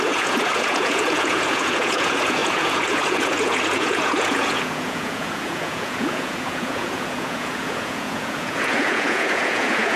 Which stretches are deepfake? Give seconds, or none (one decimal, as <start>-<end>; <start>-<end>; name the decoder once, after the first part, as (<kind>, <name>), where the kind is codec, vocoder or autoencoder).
0.0-10.0 (vocoder, Vocos)